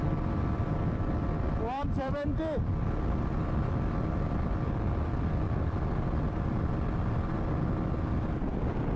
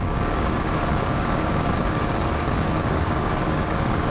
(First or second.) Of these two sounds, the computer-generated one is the second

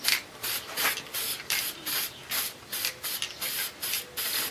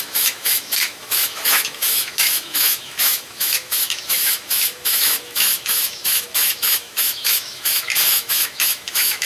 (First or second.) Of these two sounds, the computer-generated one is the second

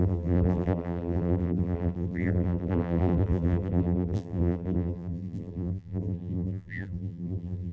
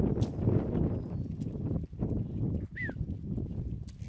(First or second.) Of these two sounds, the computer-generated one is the first